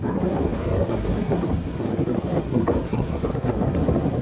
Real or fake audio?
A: fake